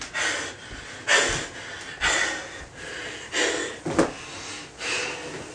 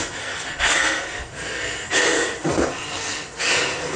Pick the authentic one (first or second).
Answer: first